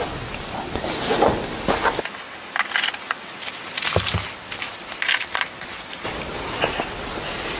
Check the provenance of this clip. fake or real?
real